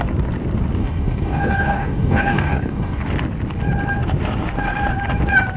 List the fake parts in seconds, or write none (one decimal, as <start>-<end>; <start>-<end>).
0.8-3.0